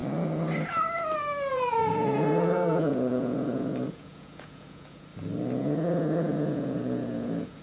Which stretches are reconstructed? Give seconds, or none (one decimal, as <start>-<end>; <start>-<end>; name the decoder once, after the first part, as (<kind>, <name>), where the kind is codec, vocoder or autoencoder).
1.5-5.1 (vocoder, Vocos); 5.6-7.6